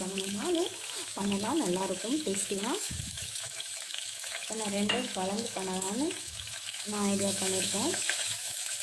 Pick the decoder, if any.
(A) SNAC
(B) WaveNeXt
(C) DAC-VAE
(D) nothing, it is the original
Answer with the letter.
C